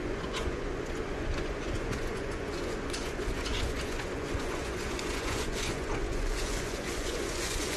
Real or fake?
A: fake